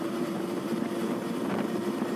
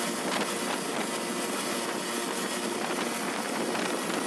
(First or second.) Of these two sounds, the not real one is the first